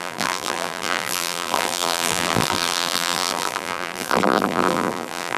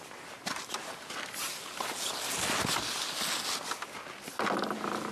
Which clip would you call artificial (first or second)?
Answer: first